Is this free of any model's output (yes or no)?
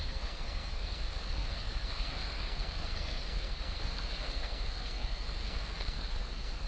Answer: no